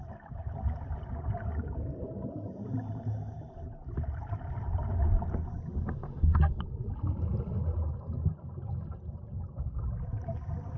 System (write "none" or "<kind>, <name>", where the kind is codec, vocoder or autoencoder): none